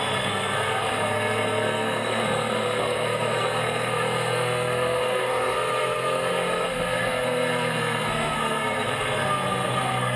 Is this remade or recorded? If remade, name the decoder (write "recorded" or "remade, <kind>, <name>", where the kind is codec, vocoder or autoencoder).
remade, codec, SNAC